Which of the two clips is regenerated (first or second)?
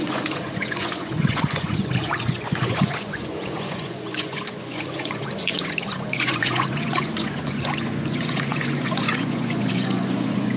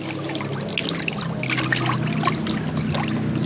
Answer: first